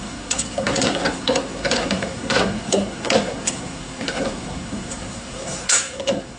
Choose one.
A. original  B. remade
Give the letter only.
B